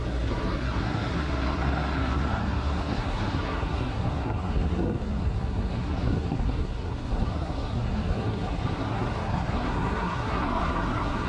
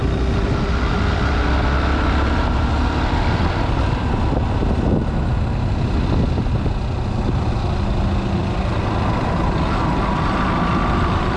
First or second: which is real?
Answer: second